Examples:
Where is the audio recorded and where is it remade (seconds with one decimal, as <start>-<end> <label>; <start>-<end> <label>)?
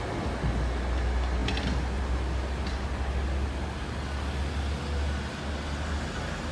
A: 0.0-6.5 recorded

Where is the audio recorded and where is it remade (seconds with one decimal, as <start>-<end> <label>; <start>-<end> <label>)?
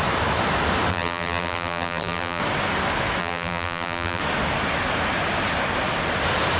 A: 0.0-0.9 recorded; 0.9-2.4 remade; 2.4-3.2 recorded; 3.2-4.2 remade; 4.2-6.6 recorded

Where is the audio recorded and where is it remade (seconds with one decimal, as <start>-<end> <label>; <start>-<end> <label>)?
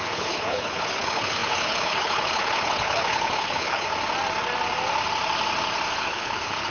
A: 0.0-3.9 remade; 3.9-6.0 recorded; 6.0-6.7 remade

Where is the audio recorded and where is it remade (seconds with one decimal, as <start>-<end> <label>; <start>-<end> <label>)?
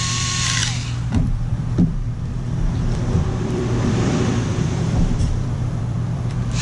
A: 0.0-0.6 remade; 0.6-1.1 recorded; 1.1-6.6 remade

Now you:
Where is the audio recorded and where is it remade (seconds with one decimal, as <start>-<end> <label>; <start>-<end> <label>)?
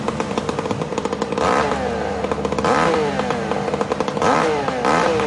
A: 0.0-5.3 recorded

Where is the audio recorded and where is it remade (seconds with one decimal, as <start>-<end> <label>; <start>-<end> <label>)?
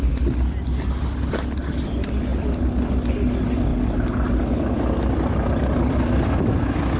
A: 0.0-7.0 recorded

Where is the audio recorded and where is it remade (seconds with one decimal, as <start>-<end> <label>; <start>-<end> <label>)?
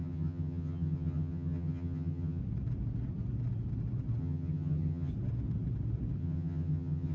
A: 0.0-2.4 remade; 2.4-4.2 recorded; 4.2-5.1 remade; 5.1-6.2 recorded; 6.2-7.1 remade